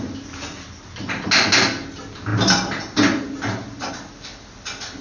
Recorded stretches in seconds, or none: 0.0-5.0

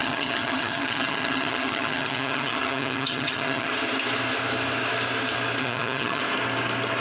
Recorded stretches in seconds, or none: 3.7-5.6; 6.2-7.0

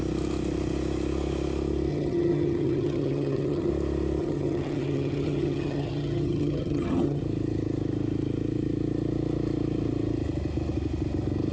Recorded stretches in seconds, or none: 0.0-1.9; 3.7-4.2; 7.2-11.5

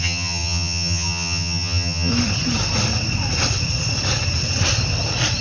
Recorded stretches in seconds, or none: 2.1-5.4

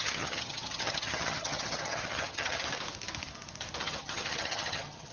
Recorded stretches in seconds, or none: 2.6-3.8

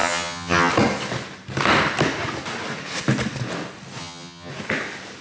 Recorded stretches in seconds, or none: 0.7-4.0; 4.5-5.2

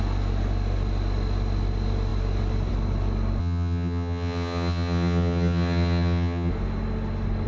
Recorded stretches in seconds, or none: 0.0-3.4; 6.5-7.5